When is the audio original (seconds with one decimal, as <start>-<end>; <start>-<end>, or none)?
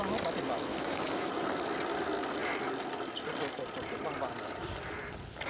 0.0-0.7; 1.3-5.5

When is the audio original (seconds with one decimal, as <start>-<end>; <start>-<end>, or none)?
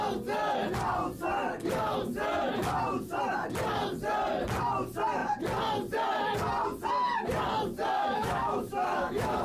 0.0-8.0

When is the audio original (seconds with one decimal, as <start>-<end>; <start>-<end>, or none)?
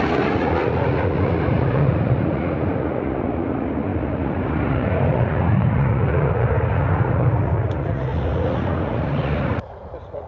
none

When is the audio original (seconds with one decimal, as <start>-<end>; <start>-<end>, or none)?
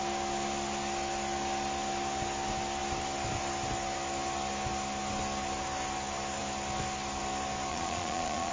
0.0-7.7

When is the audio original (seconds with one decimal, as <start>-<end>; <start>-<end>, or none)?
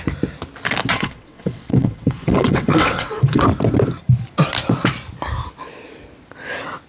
0.0-0.9; 3.4-6.9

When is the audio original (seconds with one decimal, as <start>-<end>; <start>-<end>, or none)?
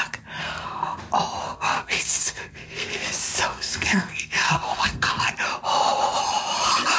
0.0-0.4; 1.0-1.4; 3.1-3.5; 5.3-7.0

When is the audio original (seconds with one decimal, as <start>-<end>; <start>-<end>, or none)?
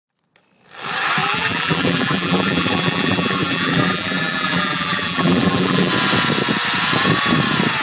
0.0-1.2; 5.9-7.8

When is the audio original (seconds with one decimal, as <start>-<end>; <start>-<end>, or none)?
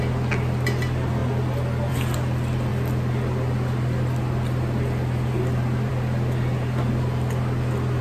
0.0-8.0